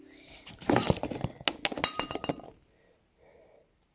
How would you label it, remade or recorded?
recorded